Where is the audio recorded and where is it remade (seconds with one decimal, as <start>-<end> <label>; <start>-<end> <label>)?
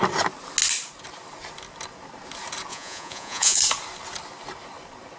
0.0-2.7 recorded; 2.7-3.6 remade; 3.6-5.2 recorded